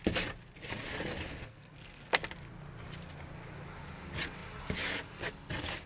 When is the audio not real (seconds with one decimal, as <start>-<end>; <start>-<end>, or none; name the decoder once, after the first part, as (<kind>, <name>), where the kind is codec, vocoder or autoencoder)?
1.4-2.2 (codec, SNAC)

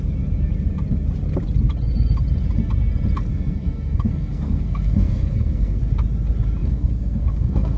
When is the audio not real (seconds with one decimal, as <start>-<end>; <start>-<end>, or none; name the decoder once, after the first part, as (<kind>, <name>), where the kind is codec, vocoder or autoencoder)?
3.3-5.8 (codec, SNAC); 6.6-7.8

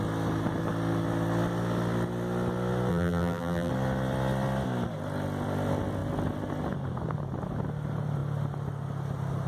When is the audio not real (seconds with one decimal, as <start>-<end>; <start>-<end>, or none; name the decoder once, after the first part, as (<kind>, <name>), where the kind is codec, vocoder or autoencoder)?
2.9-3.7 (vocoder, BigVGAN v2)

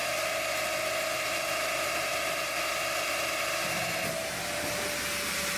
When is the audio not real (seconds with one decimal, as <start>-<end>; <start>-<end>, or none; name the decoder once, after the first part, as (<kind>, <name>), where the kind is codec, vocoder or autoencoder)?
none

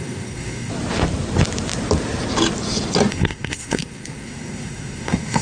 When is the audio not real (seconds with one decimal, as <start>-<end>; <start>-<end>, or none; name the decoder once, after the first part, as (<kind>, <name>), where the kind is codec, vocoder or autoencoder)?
0.0-0.7 (codec, SNAC); 3.1-5.4